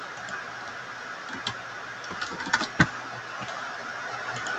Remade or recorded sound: recorded